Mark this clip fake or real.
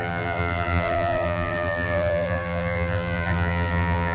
fake